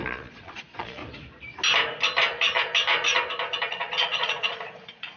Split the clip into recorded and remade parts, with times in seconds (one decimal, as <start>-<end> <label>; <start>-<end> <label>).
0.0-1.0 remade; 1.0-3.7 recorded; 3.7-5.2 remade